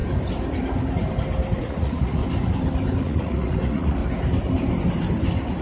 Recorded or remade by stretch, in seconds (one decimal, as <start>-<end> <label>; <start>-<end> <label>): 0.0-1.6 recorded; 1.6-2.2 remade; 2.2-3.0 recorded; 3.0-4.0 remade; 4.0-5.6 recorded